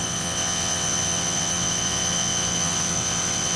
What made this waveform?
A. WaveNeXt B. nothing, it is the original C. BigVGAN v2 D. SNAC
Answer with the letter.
A